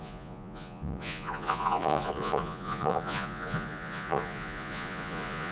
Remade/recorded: remade